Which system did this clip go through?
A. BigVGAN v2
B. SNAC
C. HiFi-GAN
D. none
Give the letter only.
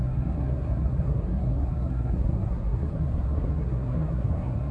B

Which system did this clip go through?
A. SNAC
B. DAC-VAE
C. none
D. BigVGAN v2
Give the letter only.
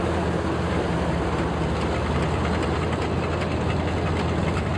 C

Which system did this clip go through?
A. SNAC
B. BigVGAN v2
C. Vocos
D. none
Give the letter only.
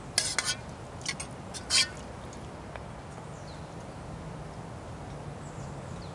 D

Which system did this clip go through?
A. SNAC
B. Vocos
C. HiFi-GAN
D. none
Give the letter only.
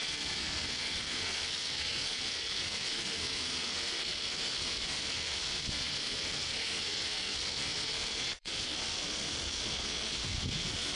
A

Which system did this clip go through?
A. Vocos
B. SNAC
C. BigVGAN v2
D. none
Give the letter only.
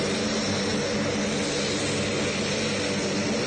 D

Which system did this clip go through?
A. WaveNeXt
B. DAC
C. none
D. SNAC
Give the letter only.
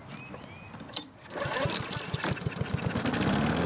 C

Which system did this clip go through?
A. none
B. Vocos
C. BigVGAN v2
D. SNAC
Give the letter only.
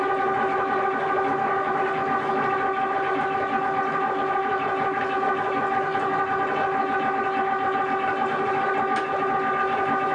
A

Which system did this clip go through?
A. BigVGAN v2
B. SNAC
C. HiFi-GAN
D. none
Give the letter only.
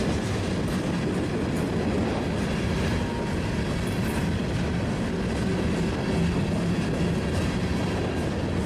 D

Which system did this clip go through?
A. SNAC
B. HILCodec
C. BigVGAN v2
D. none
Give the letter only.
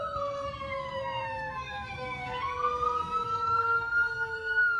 A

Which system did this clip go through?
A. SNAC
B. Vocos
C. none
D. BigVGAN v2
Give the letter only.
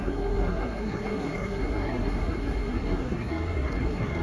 A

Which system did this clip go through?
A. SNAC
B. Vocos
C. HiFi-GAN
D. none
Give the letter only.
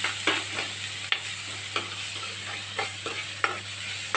D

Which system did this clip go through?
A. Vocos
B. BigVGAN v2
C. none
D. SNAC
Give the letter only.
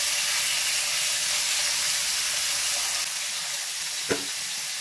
C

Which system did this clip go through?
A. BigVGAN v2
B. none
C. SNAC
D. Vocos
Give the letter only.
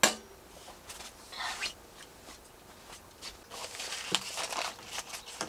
B